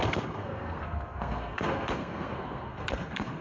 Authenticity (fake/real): fake